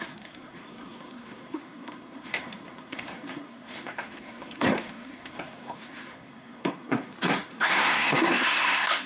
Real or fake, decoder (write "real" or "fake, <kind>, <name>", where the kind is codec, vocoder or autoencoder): fake, codec, SNAC